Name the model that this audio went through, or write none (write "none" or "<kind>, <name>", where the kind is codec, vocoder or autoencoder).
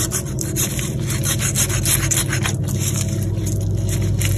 none